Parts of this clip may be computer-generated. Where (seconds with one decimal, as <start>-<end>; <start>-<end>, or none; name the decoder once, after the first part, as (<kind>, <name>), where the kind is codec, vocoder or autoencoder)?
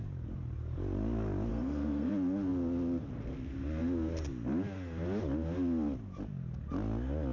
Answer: 1.5-2.1 (codec, SNAC)